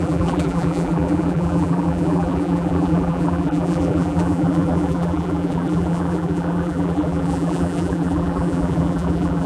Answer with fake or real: fake